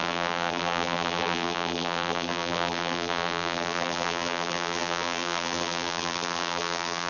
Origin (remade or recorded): remade